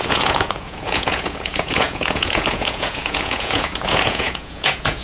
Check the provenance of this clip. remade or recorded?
remade